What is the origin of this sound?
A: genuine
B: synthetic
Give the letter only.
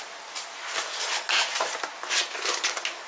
A